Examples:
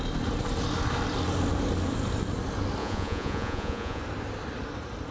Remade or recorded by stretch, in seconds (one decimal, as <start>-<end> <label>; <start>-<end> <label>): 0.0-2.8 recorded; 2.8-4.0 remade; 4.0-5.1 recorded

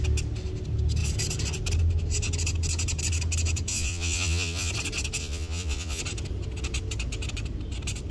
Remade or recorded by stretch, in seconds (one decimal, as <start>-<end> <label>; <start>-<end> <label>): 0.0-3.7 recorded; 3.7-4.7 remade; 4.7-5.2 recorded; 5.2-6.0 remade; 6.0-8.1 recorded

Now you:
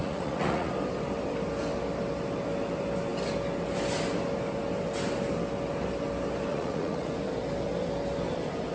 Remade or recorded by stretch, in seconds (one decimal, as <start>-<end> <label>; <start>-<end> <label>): 0.0-0.7 remade; 0.7-6.5 recorded; 6.5-7.1 remade; 7.1-8.7 recorded

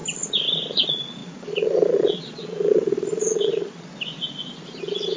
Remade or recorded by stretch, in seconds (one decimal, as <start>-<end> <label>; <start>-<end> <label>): 0.0-0.7 recorded; 0.7-3.9 remade; 3.9-4.8 recorded; 4.8-5.2 remade

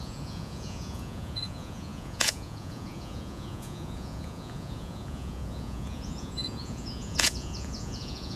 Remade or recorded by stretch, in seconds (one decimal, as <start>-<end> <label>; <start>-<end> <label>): 0.0-8.4 remade